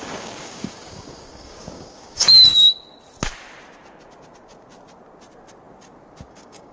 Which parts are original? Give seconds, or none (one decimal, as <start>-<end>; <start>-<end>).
2.5-6.3